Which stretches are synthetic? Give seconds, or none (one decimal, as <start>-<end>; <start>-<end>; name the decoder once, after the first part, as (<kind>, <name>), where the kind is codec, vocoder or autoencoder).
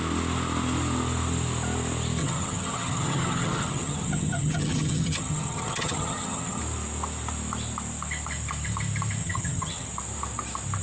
2.2-6.6 (vocoder, HiFi-GAN); 9.2-9.9